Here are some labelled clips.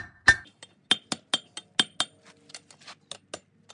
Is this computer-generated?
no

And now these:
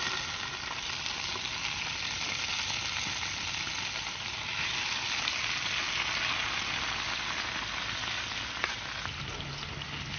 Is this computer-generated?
no